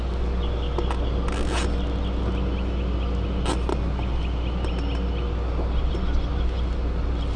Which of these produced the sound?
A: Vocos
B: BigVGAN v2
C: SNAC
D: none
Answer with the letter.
D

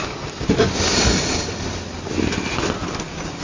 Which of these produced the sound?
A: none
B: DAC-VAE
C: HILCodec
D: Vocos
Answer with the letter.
A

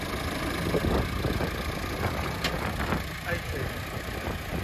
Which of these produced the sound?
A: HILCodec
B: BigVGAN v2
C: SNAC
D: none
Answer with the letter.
D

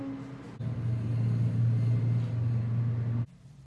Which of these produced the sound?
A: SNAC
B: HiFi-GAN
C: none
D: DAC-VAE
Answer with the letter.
C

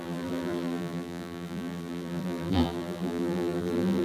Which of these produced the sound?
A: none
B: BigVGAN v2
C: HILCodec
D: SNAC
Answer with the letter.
B